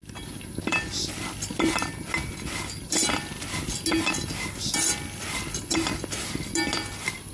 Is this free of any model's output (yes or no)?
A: yes